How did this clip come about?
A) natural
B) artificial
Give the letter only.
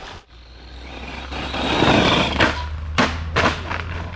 A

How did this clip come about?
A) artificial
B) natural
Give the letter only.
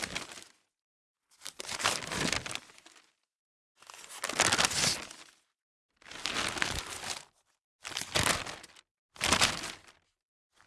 B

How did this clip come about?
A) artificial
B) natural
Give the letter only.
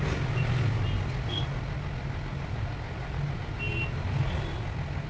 B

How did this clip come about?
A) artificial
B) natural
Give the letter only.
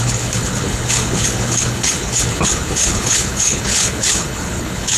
A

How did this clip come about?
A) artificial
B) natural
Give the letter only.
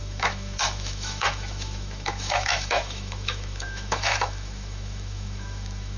A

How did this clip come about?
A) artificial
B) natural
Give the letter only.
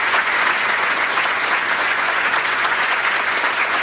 A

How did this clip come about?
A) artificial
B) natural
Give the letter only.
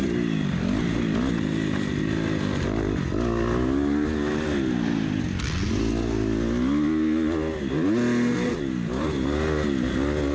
B